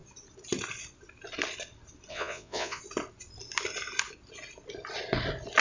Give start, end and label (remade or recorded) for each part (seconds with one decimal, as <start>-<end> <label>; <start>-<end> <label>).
0.0-2.1 recorded; 2.1-2.8 remade; 2.8-5.6 recorded